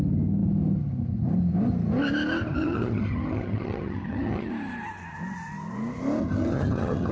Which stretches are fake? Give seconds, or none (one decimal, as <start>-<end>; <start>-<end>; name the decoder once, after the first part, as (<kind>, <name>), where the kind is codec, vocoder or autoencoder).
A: 2.5-4.5 (vocoder, HiFi-GAN); 6.2-7.1